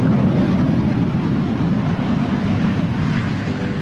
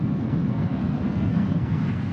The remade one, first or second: second